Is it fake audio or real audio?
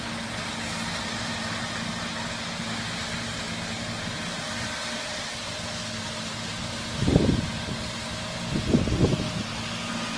real